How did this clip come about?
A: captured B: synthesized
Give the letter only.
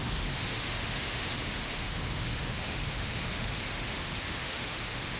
B